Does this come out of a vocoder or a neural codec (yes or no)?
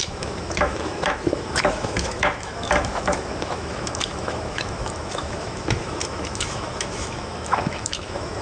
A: yes